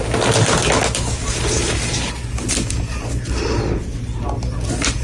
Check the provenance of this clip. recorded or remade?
recorded